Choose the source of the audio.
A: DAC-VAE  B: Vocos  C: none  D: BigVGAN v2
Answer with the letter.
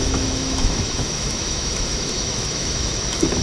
A